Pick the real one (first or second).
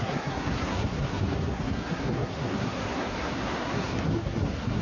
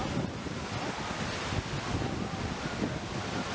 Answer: second